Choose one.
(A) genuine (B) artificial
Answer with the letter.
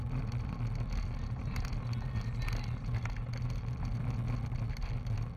A